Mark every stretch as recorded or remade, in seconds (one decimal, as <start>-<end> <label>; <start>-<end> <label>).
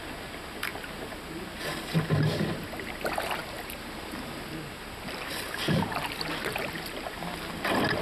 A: 0.0-8.0 recorded